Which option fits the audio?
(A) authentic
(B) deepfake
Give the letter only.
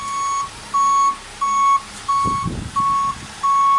A